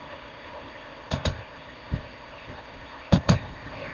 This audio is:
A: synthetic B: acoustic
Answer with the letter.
A